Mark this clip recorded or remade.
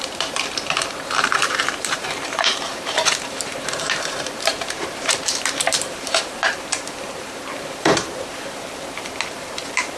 remade